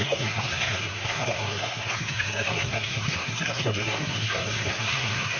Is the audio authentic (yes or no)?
no